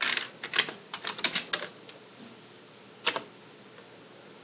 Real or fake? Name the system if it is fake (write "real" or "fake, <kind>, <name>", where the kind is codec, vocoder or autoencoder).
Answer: real